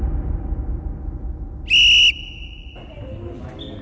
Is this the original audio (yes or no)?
yes